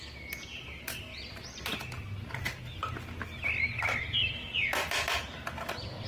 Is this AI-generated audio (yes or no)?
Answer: no